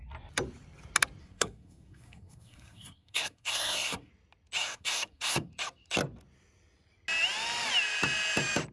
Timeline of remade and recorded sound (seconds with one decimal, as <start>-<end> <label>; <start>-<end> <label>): 0.0-1.2 recorded; 1.2-4.1 remade; 4.1-4.6 recorded; 4.6-5.5 remade; 5.5-8.7 recorded